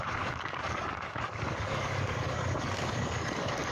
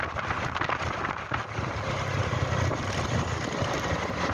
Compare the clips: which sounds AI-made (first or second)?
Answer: first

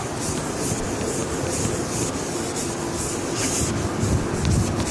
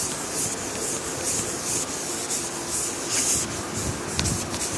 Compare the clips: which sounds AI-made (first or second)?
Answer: first